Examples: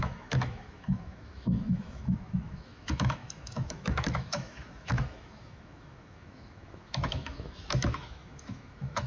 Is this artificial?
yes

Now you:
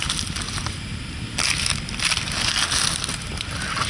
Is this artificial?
no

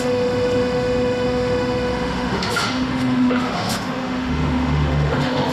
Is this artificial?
yes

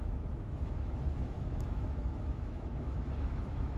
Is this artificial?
yes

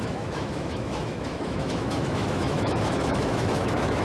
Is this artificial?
yes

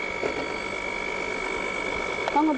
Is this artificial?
no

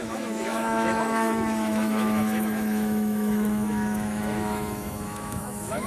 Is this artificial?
yes